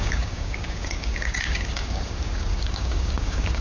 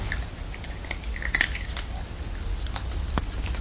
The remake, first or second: first